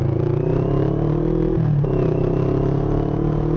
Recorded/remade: recorded